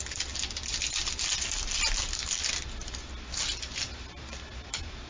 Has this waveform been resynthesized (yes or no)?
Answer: no